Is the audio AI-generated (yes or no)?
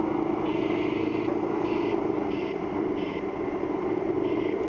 no